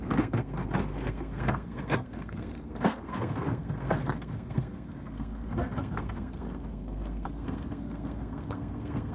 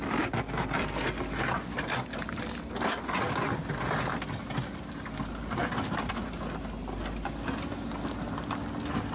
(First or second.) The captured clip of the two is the second